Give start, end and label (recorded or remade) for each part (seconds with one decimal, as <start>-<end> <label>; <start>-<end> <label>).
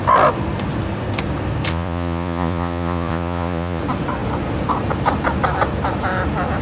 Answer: 0.0-1.7 recorded; 1.7-3.8 remade; 3.8-6.6 recorded